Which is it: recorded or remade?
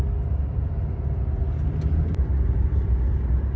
recorded